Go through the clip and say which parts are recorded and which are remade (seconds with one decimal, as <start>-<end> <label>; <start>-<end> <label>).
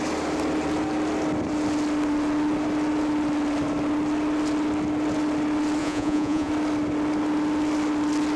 0.0-5.8 recorded; 5.8-6.5 remade; 6.5-8.4 recorded